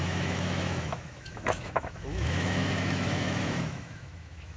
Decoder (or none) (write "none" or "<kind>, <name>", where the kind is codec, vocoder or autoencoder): autoencoder, DAC-VAE